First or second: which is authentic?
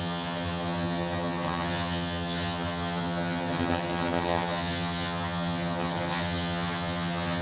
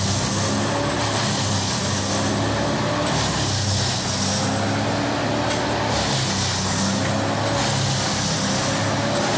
second